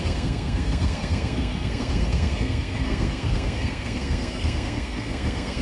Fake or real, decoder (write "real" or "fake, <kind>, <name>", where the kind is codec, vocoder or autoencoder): fake, codec, SNAC